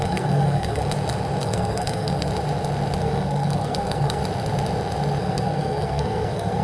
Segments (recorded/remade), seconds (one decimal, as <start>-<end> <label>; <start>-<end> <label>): 0.0-0.8 remade; 0.8-1.4 recorded; 1.4-2.3 remade; 2.3-3.0 recorded; 3.0-4.2 remade; 4.2-5.2 recorded; 5.2-6.6 remade

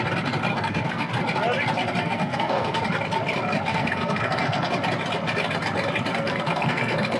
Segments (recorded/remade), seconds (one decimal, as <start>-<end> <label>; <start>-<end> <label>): 0.0-0.5 recorded; 0.5-1.1 remade; 1.1-2.0 recorded; 2.0-2.8 remade; 2.8-3.7 recorded; 3.7-4.7 remade; 4.7-6.1 recorded; 6.1-7.2 remade

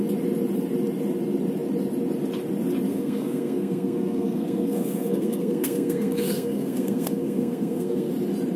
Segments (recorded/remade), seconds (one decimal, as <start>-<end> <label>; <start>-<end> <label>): 0.0-2.9 recorded; 2.9-8.1 remade; 8.1-8.6 recorded